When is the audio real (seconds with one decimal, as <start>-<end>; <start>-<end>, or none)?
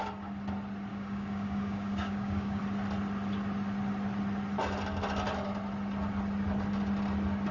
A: 0.0-0.9; 2.6-7.5